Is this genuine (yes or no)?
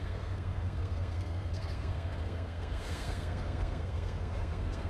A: no